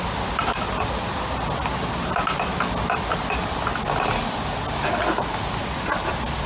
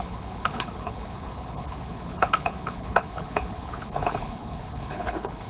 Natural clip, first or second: first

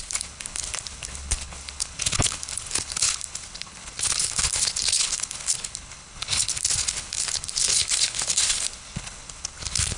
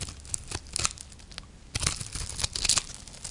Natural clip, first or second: second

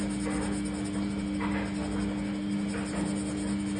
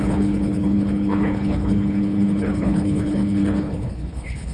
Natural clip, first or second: first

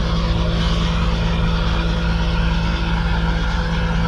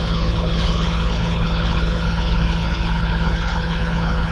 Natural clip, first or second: first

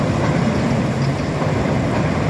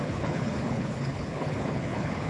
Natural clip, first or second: first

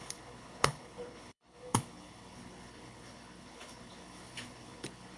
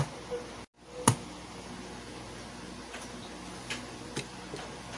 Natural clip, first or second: second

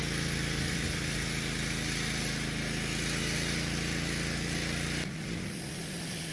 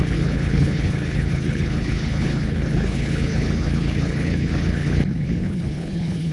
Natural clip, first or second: first